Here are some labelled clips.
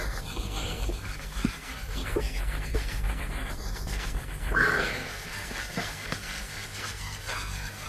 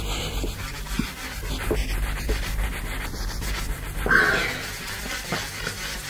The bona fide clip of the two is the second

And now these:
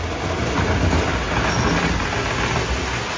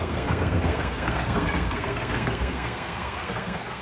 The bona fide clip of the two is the first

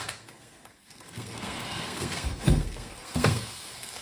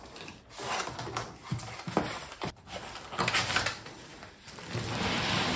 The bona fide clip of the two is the second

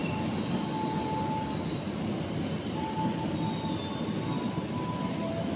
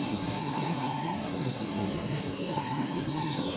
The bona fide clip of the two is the first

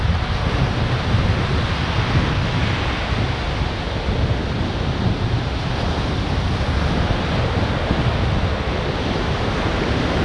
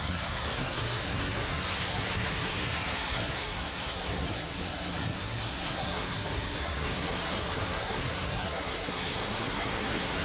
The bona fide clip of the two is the first